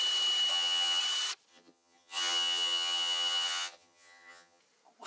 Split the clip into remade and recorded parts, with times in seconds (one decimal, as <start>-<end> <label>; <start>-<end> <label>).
0.0-0.5 recorded; 0.5-1.0 remade; 1.0-1.5 recorded; 1.5-4.6 remade; 4.6-5.1 recorded